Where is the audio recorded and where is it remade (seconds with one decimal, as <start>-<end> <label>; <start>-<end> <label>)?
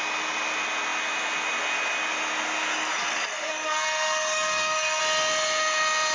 0.0-2.7 recorded; 2.7-5.0 remade; 5.0-6.1 recorded